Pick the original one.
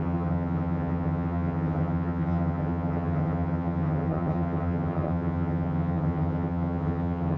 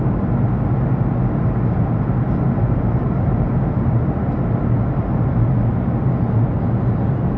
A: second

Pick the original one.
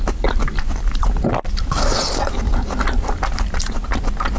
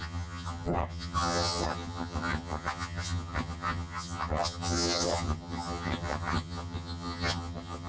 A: first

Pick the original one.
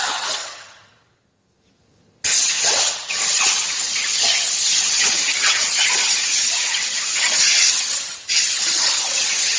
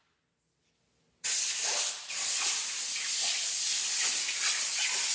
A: second